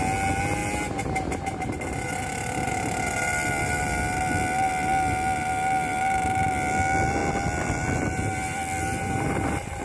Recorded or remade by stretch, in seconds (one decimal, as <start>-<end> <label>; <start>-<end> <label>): 0.0-7.2 recorded; 7.2-9.8 remade